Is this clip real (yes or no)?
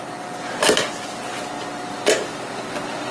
yes